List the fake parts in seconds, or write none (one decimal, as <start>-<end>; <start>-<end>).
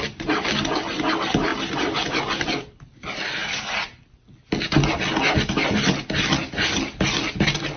1.5-2.8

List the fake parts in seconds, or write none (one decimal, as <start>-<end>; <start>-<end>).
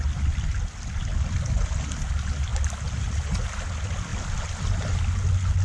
none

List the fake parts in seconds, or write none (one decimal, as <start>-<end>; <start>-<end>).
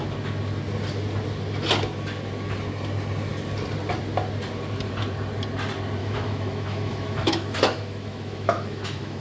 6.0-9.2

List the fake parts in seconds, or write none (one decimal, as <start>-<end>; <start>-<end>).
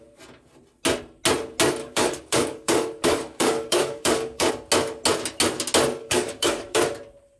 1.8-4.5; 6.0-6.8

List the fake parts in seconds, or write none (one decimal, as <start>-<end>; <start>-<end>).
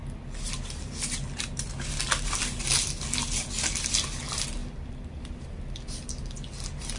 4.6-6.1